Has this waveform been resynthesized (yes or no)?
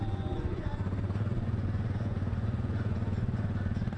yes